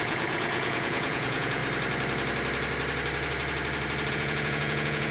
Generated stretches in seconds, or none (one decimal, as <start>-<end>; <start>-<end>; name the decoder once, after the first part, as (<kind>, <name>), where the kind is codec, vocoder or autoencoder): 0.0-1.6 (vocoder, Vocos); 4.1-5.1